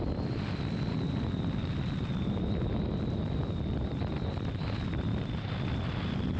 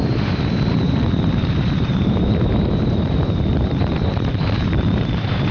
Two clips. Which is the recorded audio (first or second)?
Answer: first